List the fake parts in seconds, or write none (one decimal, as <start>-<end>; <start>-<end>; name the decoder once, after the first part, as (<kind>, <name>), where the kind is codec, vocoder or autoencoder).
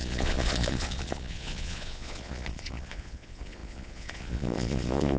0.0-5.2 (vocoder, Vocos)